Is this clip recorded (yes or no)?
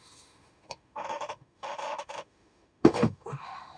no